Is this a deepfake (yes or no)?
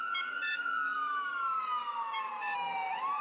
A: yes